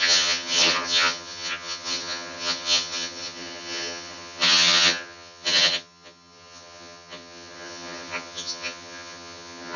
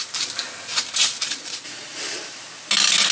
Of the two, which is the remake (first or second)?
first